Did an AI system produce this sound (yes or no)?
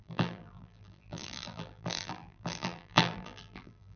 yes